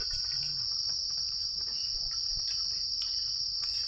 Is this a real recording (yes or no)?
no